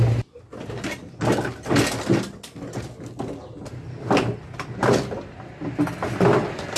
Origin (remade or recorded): recorded